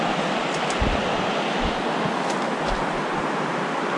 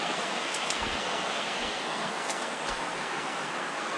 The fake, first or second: second